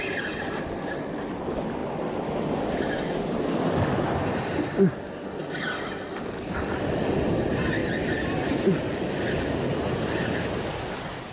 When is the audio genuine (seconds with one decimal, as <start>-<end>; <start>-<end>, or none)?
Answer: 0.0-11.3